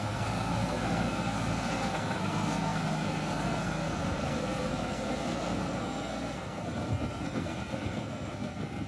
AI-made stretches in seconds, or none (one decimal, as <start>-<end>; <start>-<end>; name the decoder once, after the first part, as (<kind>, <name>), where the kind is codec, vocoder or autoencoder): 0.0-8.9 (codec, SNAC)